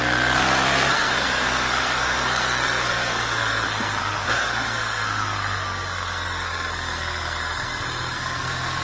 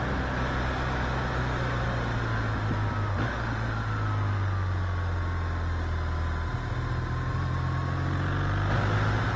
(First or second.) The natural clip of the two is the second